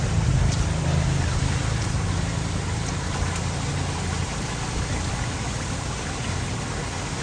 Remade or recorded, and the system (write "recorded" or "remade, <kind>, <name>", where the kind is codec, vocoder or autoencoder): recorded